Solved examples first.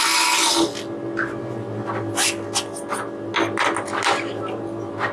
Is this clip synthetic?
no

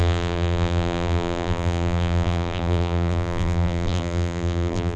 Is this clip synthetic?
yes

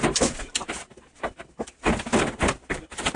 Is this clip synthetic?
no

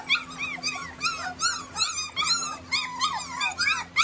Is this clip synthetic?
no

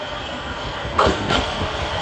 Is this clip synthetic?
yes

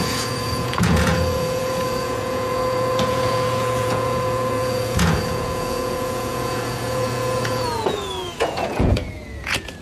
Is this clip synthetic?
yes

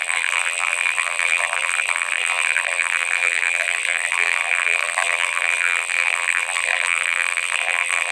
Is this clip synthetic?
yes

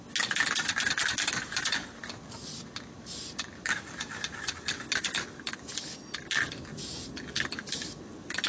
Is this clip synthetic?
no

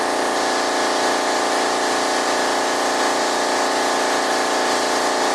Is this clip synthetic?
no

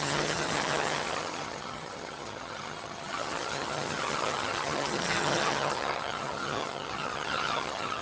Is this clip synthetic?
yes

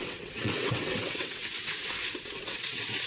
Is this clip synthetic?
yes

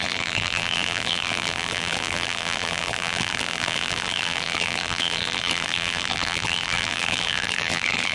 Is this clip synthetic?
yes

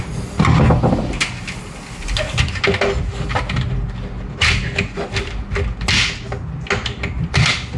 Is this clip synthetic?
no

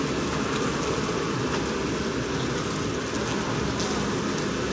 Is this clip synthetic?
no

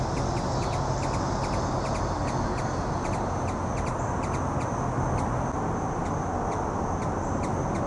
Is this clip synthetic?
no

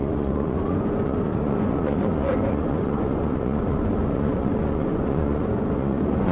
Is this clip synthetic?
yes